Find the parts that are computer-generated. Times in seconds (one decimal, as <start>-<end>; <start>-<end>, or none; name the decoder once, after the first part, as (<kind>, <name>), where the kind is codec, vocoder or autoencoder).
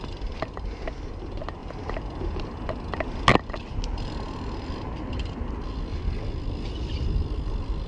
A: 1.6-2.2 (vocoder, BigVGAN v2); 3.3-6.2